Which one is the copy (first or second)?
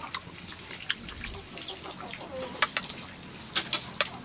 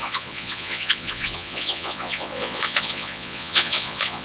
second